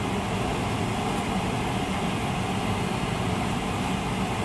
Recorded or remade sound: recorded